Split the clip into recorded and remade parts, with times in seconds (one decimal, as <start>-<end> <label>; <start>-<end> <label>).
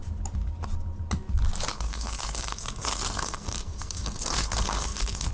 0.0-1.7 recorded; 1.7-5.3 remade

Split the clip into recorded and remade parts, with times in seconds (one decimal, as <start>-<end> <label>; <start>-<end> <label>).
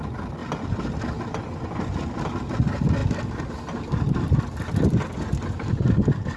0.0-6.4 recorded